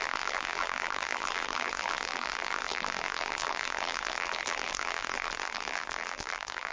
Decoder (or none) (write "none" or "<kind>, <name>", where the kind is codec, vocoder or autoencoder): vocoder, BigVGAN v2